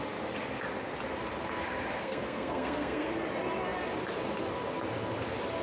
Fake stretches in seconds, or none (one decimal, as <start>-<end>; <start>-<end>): 2.0-3.1